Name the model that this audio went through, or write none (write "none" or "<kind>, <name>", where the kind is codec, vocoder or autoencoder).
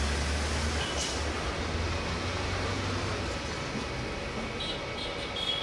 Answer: none